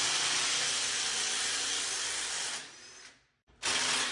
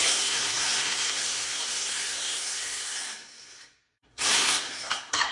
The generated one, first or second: second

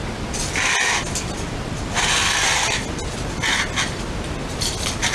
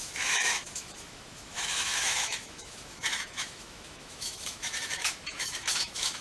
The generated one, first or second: second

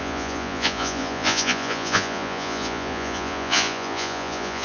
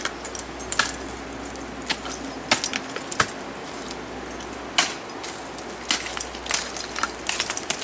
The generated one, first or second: first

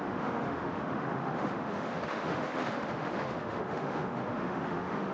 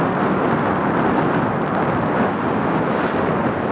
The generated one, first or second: first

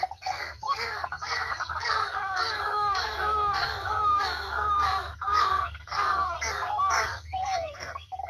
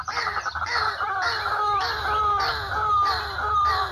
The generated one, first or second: first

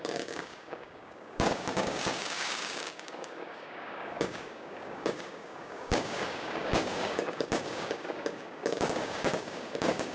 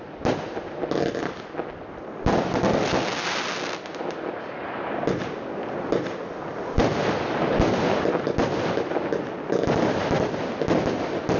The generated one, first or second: first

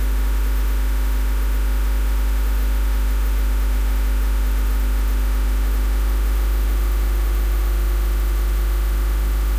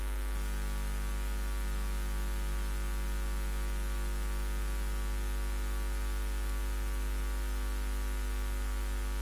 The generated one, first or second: first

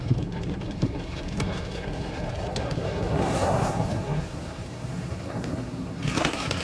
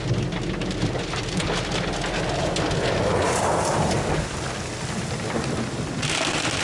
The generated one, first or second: first